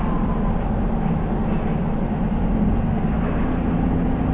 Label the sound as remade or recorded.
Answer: recorded